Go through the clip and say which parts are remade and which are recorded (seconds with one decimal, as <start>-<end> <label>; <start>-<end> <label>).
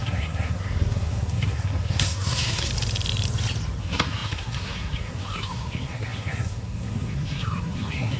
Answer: 0.0-2.7 remade; 2.7-3.8 recorded; 3.8-8.2 remade